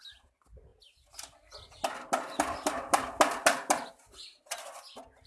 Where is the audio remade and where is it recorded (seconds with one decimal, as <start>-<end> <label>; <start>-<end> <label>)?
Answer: 0.0-5.3 recorded